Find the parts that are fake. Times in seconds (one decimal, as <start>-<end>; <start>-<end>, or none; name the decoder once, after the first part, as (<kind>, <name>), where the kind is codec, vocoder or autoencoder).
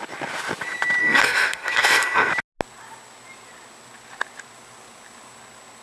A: 1.0-2.3 (codec, SNAC)